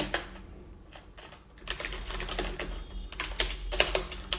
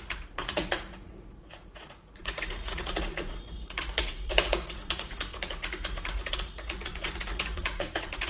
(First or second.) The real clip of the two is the first